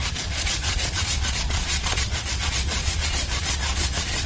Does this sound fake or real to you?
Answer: fake